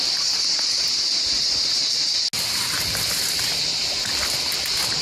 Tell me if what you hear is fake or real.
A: real